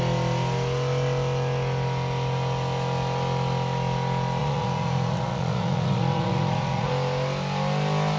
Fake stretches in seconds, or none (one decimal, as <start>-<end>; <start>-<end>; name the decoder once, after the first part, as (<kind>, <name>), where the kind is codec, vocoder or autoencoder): 4.4-6.9 (vocoder, Vocos)